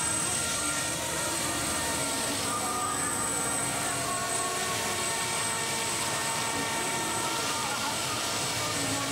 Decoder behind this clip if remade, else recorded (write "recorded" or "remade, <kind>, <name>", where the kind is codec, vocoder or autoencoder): remade, vocoder, BigVGAN v2